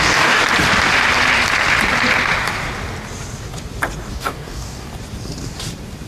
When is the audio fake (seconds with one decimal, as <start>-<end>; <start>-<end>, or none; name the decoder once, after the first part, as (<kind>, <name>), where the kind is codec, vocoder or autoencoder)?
0.0-0.4 (codec, DAC); 4.1-4.9